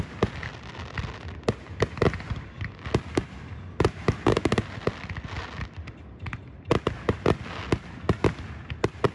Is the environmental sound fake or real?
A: real